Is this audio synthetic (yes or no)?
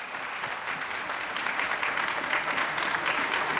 no